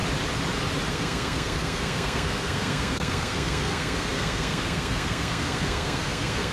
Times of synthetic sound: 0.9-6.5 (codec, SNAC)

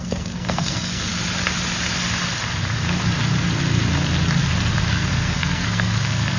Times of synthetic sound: 0.0-1.1 (codec, SNAC); 4.9-6.4

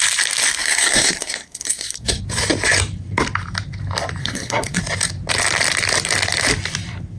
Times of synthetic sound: 0.6-2.2 (codec, SNAC); 4.2-4.8

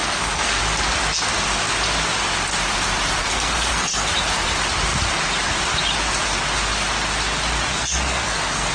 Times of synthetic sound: 0.0-0.6 (codec, SNAC); 3.2-4.1; 7.7-8.7

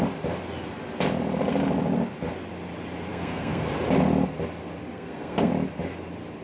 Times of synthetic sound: 3.1-3.7 (codec, SNAC); 4.8-5.5